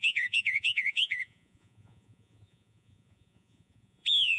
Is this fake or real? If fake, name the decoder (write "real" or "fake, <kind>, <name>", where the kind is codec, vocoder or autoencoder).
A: fake, vocoder, Vocos